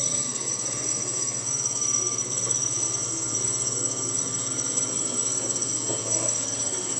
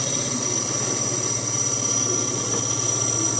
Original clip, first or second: second